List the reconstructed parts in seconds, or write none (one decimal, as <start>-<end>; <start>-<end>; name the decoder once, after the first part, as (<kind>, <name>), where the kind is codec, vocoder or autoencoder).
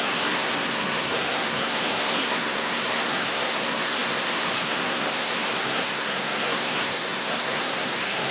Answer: 0.0-8.3 (codec, SNAC)